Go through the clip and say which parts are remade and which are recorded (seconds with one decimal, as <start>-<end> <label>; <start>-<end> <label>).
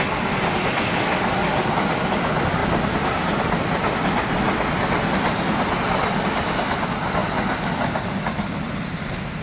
0.0-2.6 recorded; 2.6-4.3 remade; 4.3-9.4 recorded